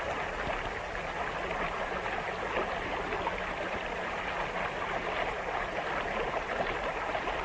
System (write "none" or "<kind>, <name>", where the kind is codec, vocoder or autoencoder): none